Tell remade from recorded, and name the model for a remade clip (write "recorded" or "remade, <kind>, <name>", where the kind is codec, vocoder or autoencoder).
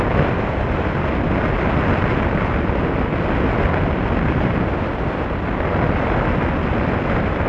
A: recorded